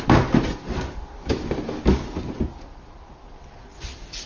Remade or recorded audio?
recorded